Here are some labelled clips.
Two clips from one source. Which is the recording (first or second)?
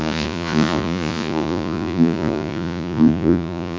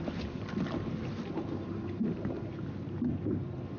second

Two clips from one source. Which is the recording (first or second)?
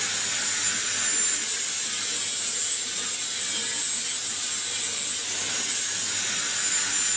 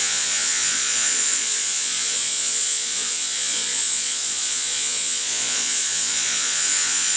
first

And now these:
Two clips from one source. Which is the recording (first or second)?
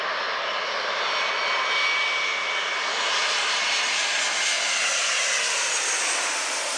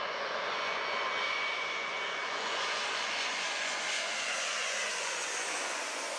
first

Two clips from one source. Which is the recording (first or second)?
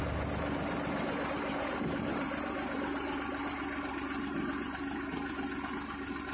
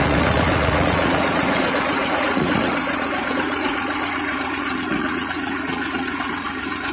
first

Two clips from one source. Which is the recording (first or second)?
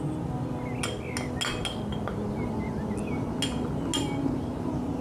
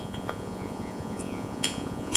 first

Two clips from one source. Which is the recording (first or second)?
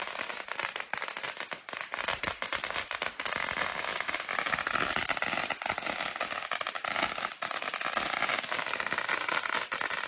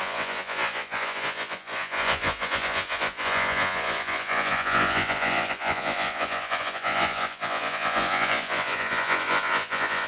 first